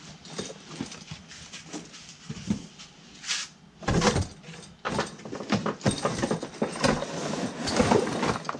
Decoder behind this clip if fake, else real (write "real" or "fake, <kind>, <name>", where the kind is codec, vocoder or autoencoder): real